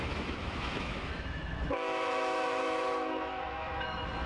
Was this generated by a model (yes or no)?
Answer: yes